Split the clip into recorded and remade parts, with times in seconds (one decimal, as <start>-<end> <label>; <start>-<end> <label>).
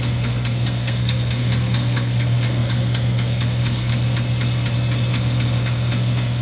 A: 0.0-3.9 remade; 3.9-5.1 recorded; 5.1-6.4 remade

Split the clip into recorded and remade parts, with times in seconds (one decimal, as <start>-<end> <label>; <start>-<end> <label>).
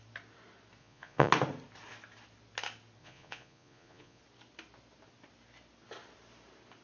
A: 0.0-0.8 recorded; 0.8-1.3 remade; 1.3-3.0 recorded; 3.0-4.2 remade; 4.2-6.8 recorded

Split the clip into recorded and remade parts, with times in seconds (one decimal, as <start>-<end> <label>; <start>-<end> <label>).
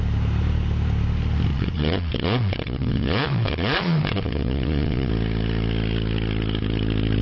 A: 0.0-1.5 recorded; 1.5-5.1 remade; 5.1-7.2 recorded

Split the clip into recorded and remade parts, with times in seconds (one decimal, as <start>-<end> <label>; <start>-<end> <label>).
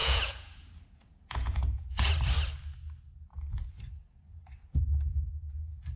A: 0.0-2.1 remade; 2.1-3.3 recorded; 3.3-4.5 remade; 4.5-6.0 recorded